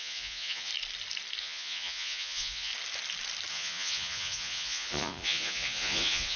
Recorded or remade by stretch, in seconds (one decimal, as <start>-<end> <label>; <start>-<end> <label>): 0.0-0.7 remade; 0.7-1.4 recorded; 1.4-2.7 remade; 2.7-3.5 recorded; 3.5-6.4 remade